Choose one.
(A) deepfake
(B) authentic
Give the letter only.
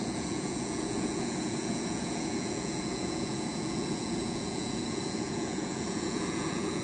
A